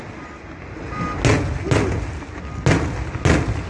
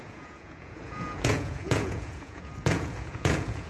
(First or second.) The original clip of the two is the first